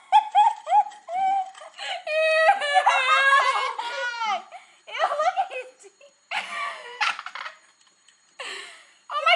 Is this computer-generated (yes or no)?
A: no